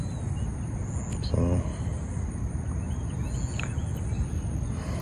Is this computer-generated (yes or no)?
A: no